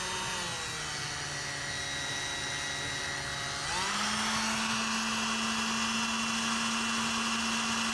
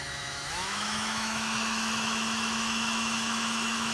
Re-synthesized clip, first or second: second